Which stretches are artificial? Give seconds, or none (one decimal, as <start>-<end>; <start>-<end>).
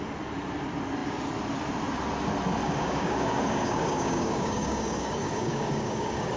2.6-6.4